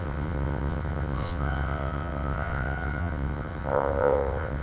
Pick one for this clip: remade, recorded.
remade